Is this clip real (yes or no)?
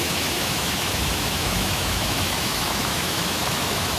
no